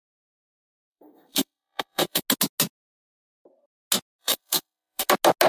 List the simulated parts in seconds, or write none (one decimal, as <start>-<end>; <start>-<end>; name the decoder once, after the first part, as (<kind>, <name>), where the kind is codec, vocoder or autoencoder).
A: 0.9-2.2 (codec, SNAC); 4.2-5.1